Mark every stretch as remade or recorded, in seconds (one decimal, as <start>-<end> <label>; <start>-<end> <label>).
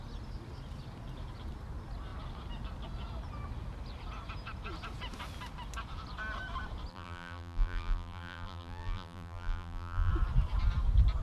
0.0-6.9 recorded; 6.9-10.1 remade; 10.1-11.2 recorded